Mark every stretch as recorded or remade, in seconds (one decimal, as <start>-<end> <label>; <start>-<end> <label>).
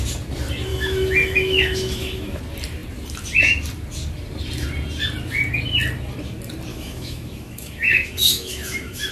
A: 0.0-0.7 recorded; 0.7-2.4 remade; 2.4-6.7 recorded; 6.7-9.1 remade